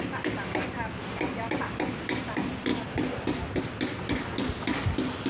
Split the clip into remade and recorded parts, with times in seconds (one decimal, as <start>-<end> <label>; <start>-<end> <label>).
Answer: 0.0-5.3 recorded